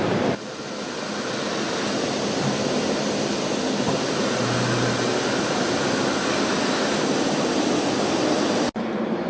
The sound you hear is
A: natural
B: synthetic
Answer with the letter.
A